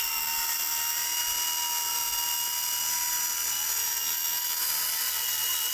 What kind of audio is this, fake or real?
real